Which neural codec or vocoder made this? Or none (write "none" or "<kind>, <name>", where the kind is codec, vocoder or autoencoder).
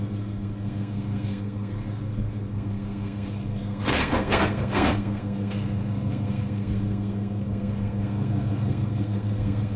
codec, SNAC